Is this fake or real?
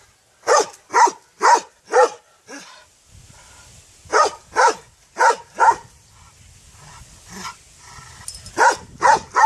real